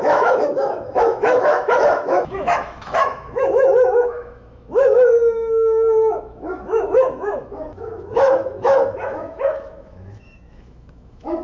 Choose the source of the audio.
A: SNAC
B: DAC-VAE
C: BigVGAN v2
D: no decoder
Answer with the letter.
B